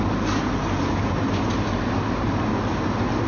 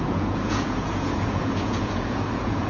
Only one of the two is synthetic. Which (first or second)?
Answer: second